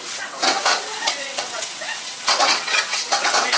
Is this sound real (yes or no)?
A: no